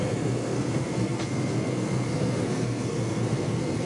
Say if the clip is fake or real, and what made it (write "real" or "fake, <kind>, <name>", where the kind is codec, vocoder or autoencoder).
fake, codec, SNAC